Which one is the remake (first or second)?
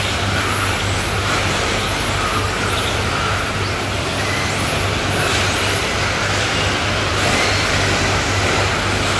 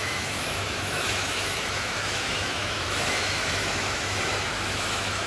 second